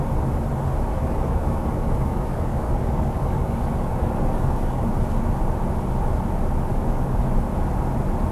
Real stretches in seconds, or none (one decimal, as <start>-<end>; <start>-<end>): 0.0-0.9; 4.9-6.7; 7.2-8.3